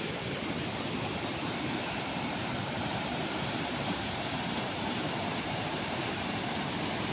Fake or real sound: fake